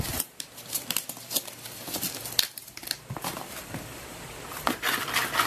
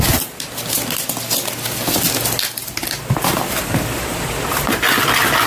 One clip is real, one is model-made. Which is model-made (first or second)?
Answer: first